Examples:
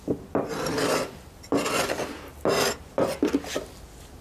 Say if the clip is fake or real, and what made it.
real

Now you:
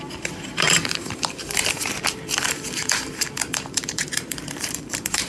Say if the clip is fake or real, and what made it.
fake, vocoder, BigVGAN v2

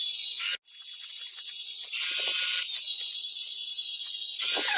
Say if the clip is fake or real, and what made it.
real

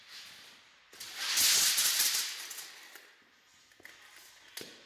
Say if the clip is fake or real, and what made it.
real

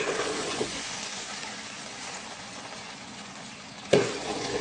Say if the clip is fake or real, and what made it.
fake, vocoder, Vocos